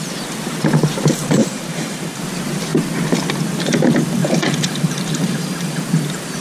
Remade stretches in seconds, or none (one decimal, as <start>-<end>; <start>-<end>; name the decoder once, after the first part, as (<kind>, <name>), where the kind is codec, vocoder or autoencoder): 1.4-2.2 (vocoder, BigVGAN v2); 4.2-5.8